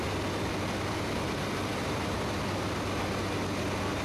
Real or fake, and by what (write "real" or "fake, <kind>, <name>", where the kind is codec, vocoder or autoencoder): real